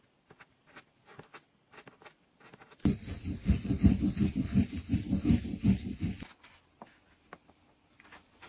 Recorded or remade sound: recorded